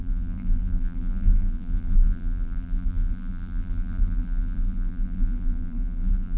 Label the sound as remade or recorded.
remade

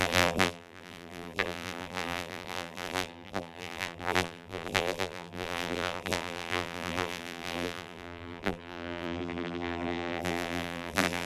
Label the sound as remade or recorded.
remade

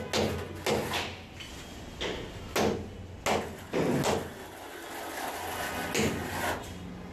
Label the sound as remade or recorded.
recorded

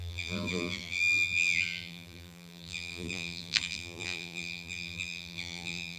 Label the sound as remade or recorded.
remade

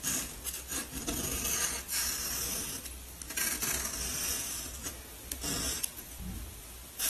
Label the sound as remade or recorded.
recorded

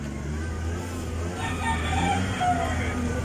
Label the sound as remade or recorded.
recorded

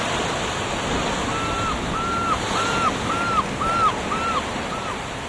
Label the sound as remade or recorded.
recorded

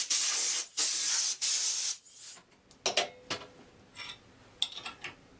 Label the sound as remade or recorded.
recorded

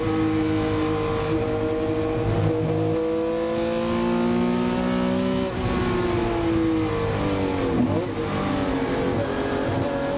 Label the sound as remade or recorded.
recorded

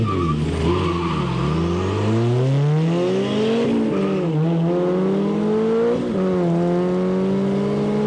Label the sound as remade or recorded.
recorded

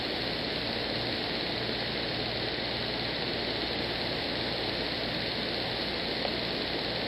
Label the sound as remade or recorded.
recorded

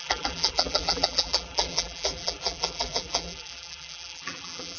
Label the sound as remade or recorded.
remade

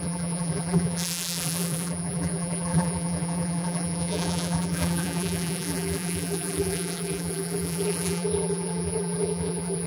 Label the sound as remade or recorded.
remade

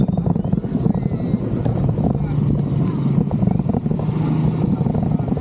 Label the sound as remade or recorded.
recorded